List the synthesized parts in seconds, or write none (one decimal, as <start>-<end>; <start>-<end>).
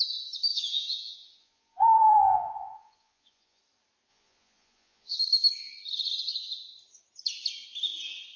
0.5-3.6; 4.1-5.2